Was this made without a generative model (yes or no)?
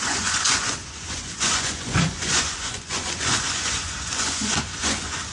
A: no